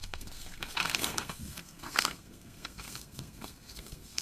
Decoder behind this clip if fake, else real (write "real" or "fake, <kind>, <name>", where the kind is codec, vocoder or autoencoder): fake, codec, SNAC